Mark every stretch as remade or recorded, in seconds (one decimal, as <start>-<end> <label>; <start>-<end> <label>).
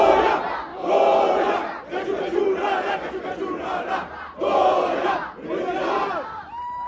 0.0-0.7 recorded; 0.7-3.1 remade; 3.1-4.6 recorded; 4.6-5.1 remade; 5.1-6.0 recorded; 6.0-6.9 remade